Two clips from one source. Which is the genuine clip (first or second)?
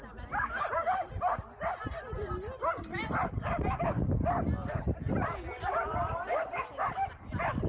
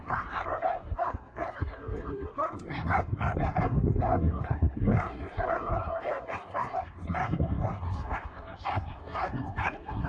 first